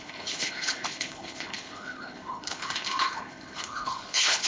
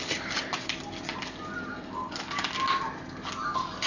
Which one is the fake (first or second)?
first